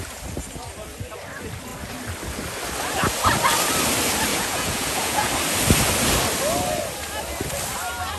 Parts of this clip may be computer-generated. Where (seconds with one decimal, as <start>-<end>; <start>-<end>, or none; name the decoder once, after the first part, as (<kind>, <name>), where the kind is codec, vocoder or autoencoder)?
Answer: 4.3-5.3 (vocoder, Vocos)